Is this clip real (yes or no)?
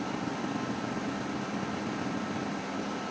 yes